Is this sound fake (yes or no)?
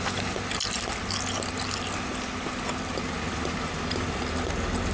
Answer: no